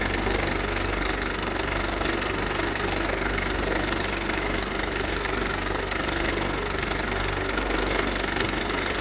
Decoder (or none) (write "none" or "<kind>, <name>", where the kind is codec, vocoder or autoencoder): codec, SNAC